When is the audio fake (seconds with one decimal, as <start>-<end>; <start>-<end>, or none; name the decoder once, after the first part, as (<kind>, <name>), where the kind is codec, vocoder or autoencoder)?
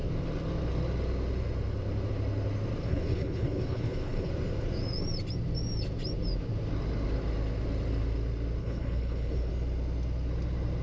2.8-4.3 (codec, HILCodec); 8.6-9.5